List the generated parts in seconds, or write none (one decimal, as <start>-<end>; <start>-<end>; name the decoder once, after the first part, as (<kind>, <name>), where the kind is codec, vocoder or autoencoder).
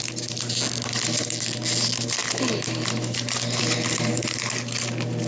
none